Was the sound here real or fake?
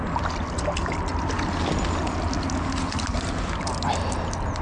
real